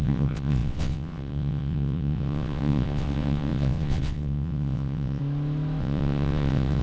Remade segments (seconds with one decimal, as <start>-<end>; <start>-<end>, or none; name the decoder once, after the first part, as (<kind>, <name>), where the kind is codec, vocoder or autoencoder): 0.0-5.2 (vocoder, WaveNeXt); 5.8-6.8